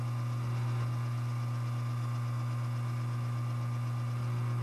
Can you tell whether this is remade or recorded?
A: recorded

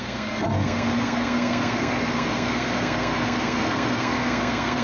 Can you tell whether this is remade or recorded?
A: remade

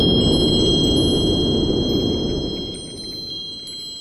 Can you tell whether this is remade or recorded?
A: recorded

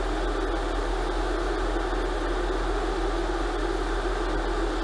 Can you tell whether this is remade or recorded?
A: recorded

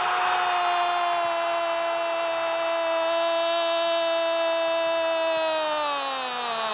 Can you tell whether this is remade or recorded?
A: recorded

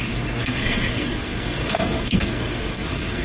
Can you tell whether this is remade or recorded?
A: remade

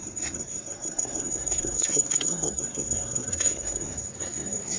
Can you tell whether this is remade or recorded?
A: remade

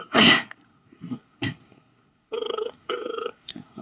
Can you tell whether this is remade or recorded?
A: remade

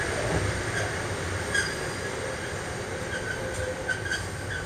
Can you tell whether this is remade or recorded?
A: recorded